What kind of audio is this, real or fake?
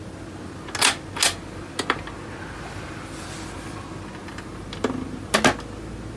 real